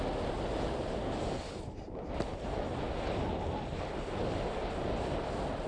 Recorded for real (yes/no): yes